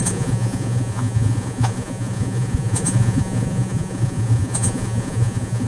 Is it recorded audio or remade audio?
remade